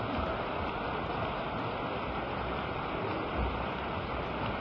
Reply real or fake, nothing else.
real